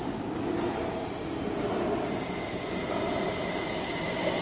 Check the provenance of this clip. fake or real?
real